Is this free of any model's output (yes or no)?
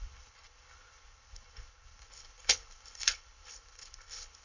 no